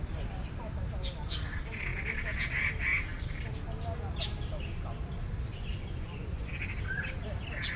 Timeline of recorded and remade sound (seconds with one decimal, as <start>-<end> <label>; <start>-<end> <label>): 0.0-5.5 recorded; 5.5-6.5 remade; 6.5-7.8 recorded